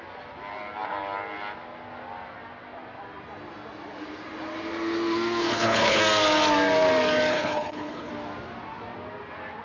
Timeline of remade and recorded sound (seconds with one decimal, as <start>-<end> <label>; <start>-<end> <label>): 0.0-5.4 recorded; 5.4-6.0 remade; 6.0-7.3 recorded; 7.3-8.1 remade; 8.1-9.6 recorded